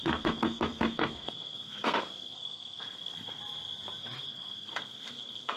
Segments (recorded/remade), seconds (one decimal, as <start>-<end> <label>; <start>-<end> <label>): 0.0-3.4 remade; 3.4-4.3 recorded; 4.3-5.6 remade